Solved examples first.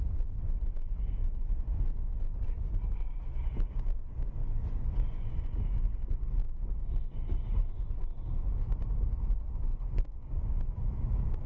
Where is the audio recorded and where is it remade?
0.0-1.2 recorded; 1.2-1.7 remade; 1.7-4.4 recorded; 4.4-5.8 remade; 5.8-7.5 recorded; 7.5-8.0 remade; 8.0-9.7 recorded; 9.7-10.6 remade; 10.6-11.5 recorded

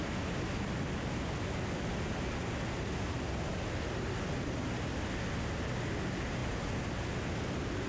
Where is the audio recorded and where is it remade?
0.0-7.9 recorded

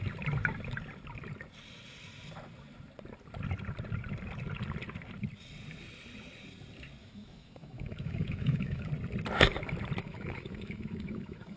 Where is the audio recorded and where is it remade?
0.0-7.0 recorded; 7.0-8.9 remade; 8.9-10.0 recorded; 10.0-11.6 remade

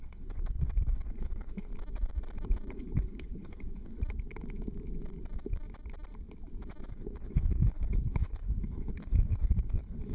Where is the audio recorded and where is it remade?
0.0-1.7 remade; 1.7-2.7 recorded; 2.7-4.0 remade; 4.0-6.9 recorded; 6.9-10.1 remade